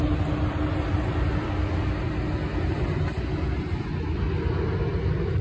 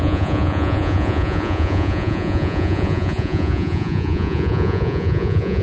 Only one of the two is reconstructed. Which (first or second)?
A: second